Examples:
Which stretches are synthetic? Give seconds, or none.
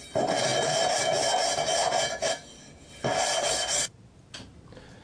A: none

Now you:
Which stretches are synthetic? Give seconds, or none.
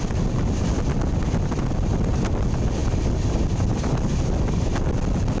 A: none